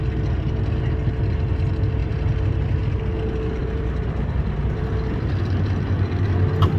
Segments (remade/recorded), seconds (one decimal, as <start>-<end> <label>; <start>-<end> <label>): 0.0-2.0 recorded; 2.0-2.8 remade; 2.8-3.6 recorded; 3.6-5.9 remade; 5.9-6.8 recorded